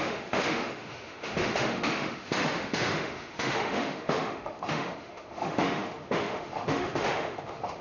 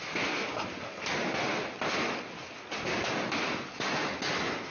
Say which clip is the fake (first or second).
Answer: first